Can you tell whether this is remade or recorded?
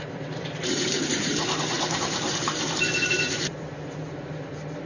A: remade